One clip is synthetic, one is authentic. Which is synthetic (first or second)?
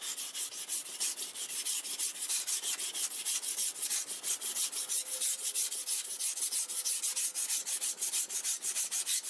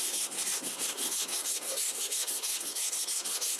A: second